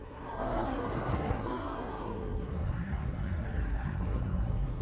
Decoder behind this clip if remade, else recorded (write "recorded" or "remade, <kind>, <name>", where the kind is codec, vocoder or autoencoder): remade, codec, SNAC